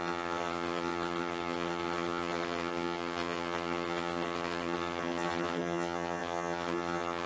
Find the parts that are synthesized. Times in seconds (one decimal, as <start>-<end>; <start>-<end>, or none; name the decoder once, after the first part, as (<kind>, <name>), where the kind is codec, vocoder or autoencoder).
0.0-7.3 (vocoder, HiFi-GAN)

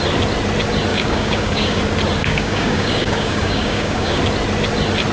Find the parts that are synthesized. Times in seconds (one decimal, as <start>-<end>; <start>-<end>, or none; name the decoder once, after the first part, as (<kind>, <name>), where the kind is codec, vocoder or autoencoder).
0.9-1.8 (codec, DAC); 2.2-4.2

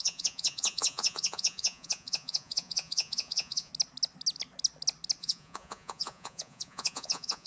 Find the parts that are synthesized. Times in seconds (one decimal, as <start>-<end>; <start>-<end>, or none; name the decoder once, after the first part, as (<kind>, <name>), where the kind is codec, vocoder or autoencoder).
0.0-3.7 (vocoder, Vocos); 5.2-7.5

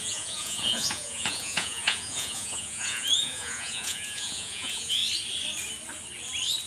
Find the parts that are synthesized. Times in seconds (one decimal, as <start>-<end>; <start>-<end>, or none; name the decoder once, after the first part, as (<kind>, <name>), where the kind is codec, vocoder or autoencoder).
0.0-5.0 (vocoder, Vocos)